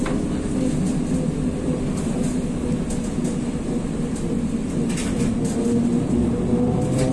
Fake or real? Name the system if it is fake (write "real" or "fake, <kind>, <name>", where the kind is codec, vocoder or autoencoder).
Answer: real